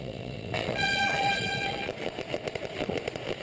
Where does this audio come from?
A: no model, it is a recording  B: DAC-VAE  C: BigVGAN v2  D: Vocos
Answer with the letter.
D